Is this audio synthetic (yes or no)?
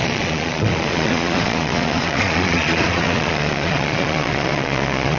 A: yes